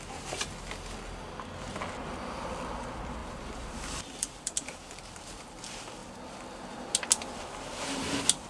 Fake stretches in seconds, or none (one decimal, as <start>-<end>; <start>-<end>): 3.2-5.1